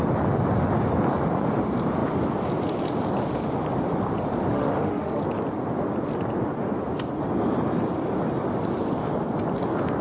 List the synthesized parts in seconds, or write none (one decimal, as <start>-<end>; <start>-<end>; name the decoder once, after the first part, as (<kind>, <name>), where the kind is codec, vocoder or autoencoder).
4.5-5.2 (autoencoder, DAC-VAE)